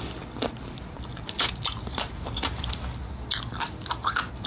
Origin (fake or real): real